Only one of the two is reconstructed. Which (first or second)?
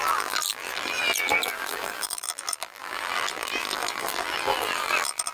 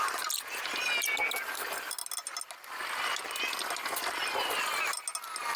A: first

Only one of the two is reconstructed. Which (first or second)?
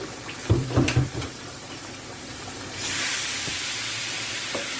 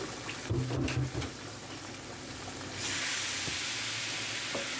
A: first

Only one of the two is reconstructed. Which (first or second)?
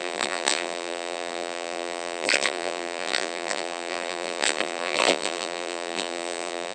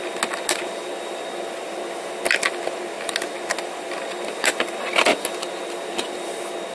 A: first